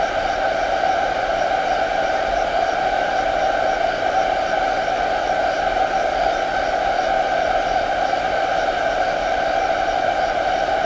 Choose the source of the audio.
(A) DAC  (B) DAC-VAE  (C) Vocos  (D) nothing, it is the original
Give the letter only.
D